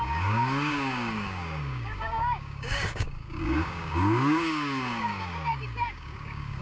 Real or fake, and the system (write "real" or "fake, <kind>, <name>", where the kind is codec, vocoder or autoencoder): fake, codec, DAC